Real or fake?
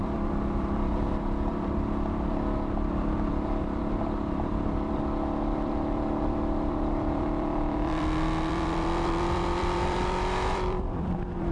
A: fake